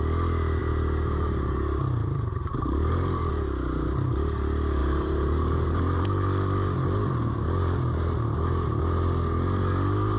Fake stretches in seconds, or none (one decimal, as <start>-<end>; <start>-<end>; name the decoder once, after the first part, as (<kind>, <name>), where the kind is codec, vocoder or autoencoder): 0.6-3.3 (vocoder, BigVGAN v2); 4.8-5.8